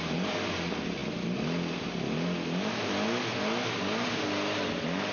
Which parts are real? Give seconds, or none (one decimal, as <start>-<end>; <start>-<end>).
0.0-5.1